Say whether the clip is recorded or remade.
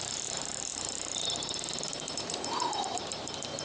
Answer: remade